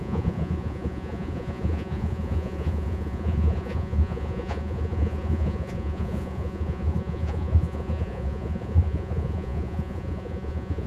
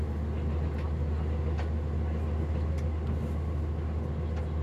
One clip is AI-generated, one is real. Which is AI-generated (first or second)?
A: first